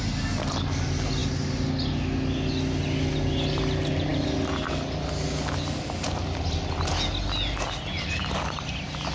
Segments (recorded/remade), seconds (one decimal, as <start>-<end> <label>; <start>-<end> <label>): 0.0-9.1 recorded